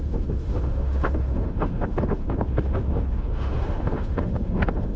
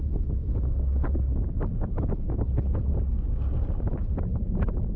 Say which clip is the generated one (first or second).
first